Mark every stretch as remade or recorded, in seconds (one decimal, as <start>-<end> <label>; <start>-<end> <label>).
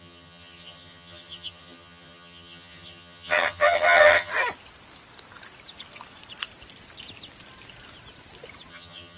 0.0-4.3 remade; 4.3-8.7 recorded; 8.7-9.2 remade